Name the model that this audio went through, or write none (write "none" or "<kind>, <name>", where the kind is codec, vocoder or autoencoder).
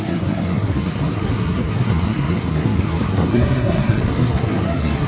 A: codec, SNAC